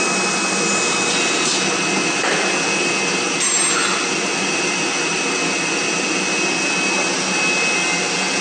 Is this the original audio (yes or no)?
yes